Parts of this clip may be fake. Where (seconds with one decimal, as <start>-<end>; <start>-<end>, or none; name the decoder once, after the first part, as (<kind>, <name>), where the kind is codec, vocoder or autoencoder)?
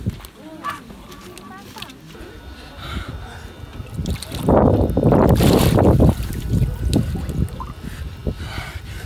none